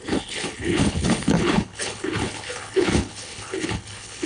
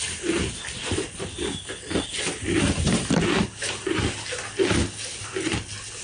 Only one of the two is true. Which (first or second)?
second